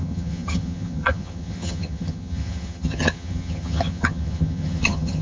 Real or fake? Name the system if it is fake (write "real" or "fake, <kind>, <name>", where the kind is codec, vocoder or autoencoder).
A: fake, vocoder, HiFi-GAN